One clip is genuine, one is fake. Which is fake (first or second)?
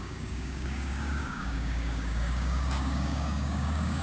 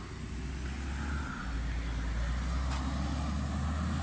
first